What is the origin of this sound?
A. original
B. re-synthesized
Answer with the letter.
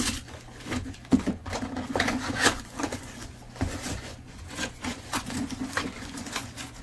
B